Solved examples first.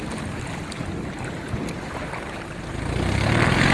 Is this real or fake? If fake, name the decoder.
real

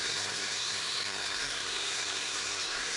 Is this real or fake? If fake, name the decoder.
fake, codec, SNAC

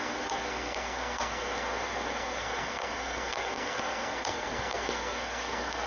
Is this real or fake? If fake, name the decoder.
fake, codec, SNAC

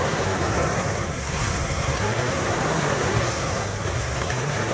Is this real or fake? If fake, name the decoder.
fake, codec, SNAC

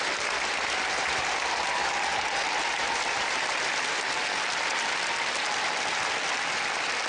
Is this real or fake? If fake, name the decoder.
real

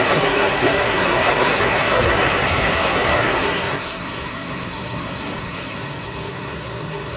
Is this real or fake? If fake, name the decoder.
fake, codec, SNAC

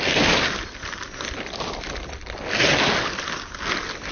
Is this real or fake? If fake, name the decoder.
real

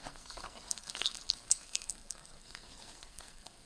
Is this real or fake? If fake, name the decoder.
fake, codec, SNAC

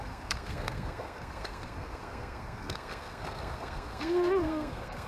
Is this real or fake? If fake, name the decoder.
fake, codec, SNAC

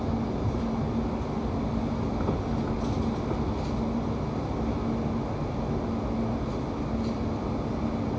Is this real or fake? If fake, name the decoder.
real